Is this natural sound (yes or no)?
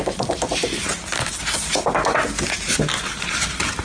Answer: yes